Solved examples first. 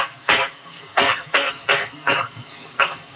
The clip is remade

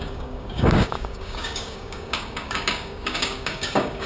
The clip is remade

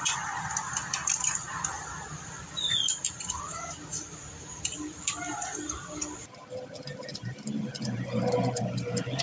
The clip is remade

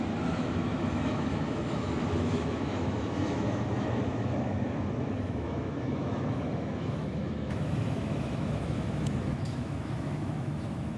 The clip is remade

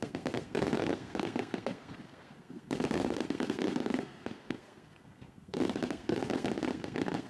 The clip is remade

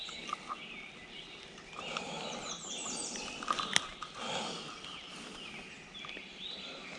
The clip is recorded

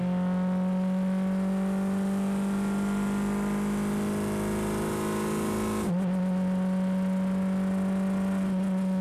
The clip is recorded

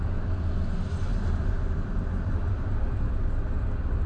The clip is recorded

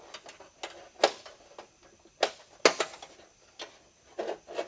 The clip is recorded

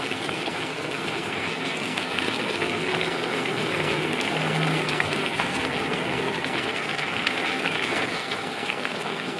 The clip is remade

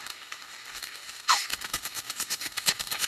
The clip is remade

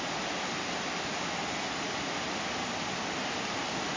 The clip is recorded